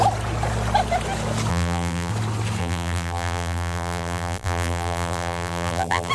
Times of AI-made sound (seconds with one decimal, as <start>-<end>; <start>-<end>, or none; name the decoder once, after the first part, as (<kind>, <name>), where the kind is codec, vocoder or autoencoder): 1.5-2.1 (vocoder, BigVGAN v2); 2.6-6.1